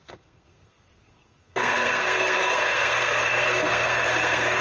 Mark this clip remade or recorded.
remade